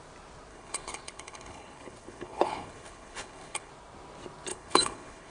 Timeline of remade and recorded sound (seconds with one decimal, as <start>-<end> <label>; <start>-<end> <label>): 0.0-0.5 recorded; 0.5-3.7 remade; 3.7-4.5 recorded; 4.5-5.3 remade